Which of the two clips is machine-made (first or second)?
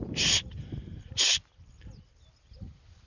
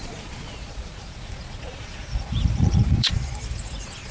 second